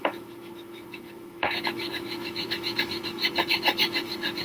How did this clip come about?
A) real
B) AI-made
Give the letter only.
B